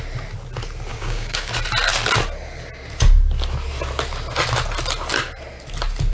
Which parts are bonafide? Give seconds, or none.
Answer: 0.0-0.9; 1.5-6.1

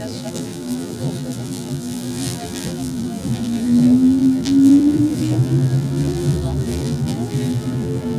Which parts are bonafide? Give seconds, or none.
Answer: none

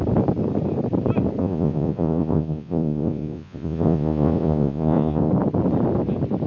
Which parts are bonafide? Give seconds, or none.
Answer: 0.0-1.4; 5.3-6.5